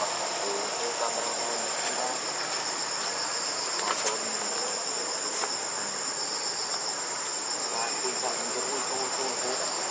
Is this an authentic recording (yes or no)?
yes